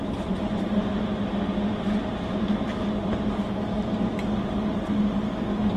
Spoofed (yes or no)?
no